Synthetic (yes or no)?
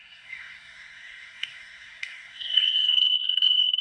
yes